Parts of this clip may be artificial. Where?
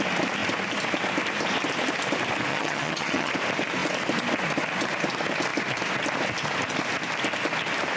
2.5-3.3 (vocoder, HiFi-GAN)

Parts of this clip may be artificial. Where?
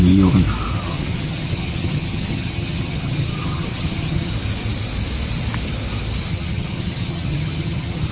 0.7-4.3 (vocoder, HiFi-GAN); 6.3-8.1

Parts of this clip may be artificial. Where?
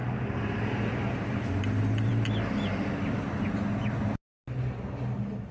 none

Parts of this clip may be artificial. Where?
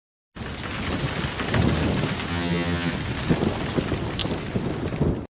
2.3-2.9 (vocoder, HiFi-GAN)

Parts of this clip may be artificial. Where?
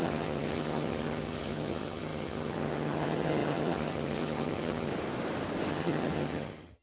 0.0-4.9 (vocoder, HiFi-GAN); 5.7-6.8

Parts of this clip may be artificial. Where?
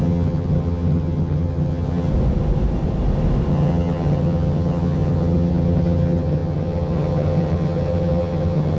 0.0-2.1 (vocoder, HiFi-GAN); 3.5-8.8